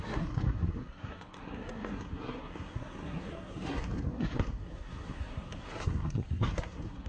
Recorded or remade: remade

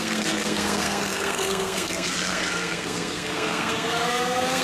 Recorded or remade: remade